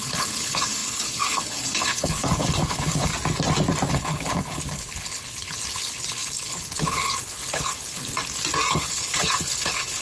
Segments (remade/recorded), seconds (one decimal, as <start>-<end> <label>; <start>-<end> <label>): 0.0-3.1 remade; 3.1-3.9 recorded; 3.9-8.0 remade; 8.0-8.7 recorded; 8.7-10.0 remade